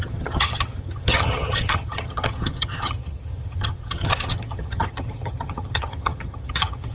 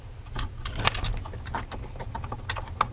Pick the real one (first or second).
second